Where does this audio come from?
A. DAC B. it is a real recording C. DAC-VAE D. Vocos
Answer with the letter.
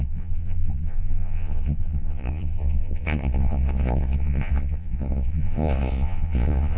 D